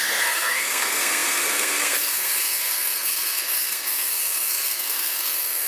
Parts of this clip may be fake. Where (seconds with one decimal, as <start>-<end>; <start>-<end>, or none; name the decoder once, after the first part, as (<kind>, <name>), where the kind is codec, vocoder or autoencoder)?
0.0-5.7 (codec, SNAC)

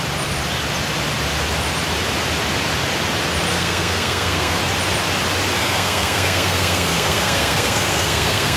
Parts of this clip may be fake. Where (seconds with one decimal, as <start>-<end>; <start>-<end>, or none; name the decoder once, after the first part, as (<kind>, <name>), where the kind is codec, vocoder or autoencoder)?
3.5-4.6 (codec, SNAC); 5.6-8.6

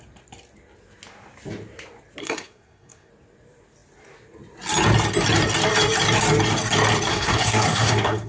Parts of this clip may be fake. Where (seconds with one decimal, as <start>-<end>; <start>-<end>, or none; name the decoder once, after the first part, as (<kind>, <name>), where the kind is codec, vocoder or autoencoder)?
2.2-3.1 (codec, SNAC); 7.1-8.3

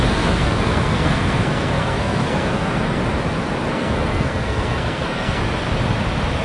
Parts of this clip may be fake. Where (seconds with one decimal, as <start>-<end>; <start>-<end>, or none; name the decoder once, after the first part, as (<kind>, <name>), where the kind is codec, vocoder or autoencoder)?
0.0-3.0 (codec, SNAC); 3.7-5.4

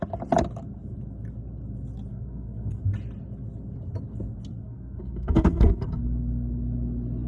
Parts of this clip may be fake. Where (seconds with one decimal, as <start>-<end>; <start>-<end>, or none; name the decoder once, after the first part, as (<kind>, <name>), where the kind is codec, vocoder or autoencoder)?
2.1-2.8 (codec, SNAC); 4.6-6.0

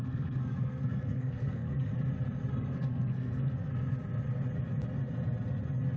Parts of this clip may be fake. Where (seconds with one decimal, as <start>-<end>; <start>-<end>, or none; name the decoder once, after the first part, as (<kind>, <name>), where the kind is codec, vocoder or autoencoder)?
0.0-1.9 (codec, SNAC); 2.5-3.7